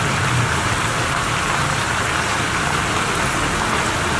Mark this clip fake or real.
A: real